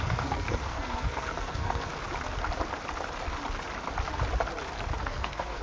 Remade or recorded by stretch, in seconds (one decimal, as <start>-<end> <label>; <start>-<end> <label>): 0.0-1.9 remade; 1.9-5.0 recorded; 5.0-5.6 remade